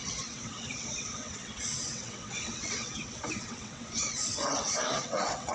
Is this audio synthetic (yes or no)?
yes